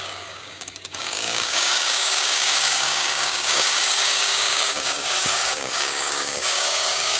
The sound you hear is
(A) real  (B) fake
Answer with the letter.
B